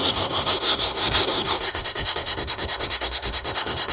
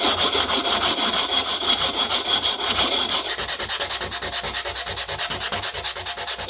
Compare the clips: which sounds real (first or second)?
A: second